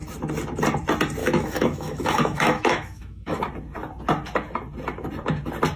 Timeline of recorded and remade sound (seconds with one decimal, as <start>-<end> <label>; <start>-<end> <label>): 0.0-1.2 recorded; 1.2-3.4 remade; 3.4-5.8 recorded